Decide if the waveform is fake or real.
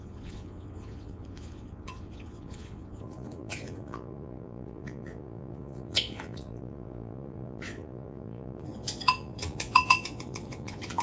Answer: fake